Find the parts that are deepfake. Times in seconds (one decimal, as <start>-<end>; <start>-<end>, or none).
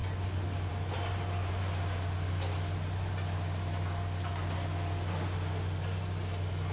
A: none